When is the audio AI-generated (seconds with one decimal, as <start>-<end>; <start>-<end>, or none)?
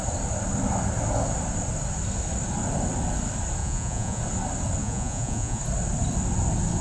3.6-4.2; 4.8-5.6